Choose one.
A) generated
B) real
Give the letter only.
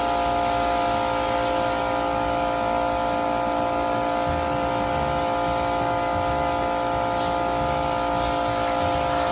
B